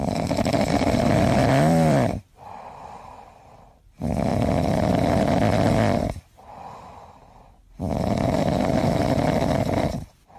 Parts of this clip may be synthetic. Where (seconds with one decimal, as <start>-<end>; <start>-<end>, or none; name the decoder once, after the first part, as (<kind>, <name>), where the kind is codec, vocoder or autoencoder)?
0.0-4.3 (vocoder, BigVGAN v2); 8.1-10.4

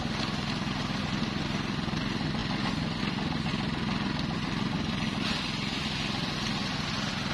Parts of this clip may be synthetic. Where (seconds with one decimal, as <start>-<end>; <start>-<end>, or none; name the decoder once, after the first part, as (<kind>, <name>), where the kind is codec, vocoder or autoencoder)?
none